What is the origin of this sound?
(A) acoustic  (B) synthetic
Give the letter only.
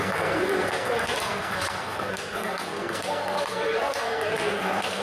B